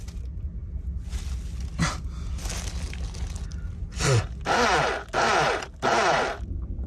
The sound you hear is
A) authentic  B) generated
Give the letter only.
A